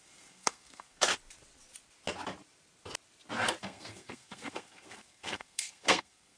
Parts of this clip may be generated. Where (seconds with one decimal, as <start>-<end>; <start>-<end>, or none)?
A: 0.0-1.1; 3.6-6.4